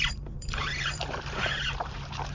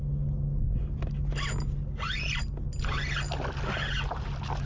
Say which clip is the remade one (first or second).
first